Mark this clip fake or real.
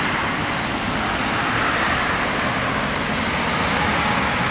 real